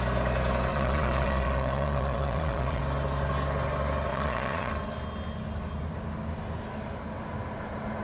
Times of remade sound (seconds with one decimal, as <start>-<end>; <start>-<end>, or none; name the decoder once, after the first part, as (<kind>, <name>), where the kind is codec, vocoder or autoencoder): 0.7-2.8 (vocoder, Vocos); 4.1-4.7